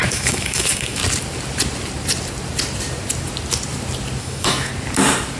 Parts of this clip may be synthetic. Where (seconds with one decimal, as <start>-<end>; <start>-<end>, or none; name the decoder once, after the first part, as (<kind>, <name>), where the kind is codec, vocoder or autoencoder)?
0.0-1.0 (autoencoder, DAC-VAE); 4.2-4.7